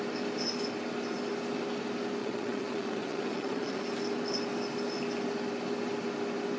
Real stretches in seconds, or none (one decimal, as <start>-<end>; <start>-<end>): 0.0-2.2; 3.8-6.6

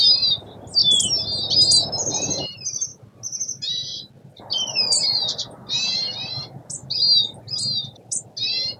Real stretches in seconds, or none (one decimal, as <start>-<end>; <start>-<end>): 0.0-8.8

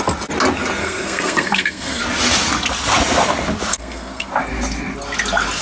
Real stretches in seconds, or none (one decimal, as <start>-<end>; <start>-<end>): 0.0-0.8; 2.0-3.7; 4.3-5.6